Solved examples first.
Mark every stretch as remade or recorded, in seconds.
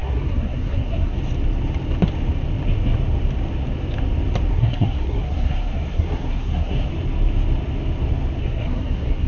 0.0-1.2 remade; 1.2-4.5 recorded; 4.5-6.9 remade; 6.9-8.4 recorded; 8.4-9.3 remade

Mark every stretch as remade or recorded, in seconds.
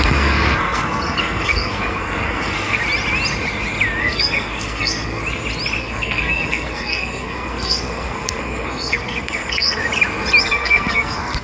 0.0-2.8 remade; 2.8-4.0 recorded; 4.0-5.2 remade; 5.2-5.8 recorded; 5.8-9.8 remade; 9.8-10.4 recorded; 10.4-11.4 remade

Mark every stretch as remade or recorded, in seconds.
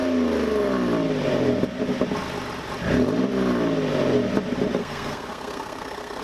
0.0-4.8 recorded; 4.8-6.2 remade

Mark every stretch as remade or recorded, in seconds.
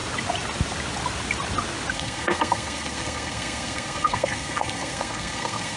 0.0-1.9 recorded; 1.9-5.8 remade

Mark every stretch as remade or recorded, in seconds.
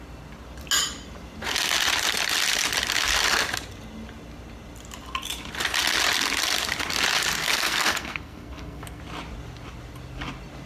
0.0-7.4 recorded; 7.4-9.0 remade; 9.0-10.7 recorded